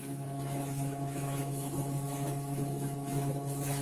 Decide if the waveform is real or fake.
fake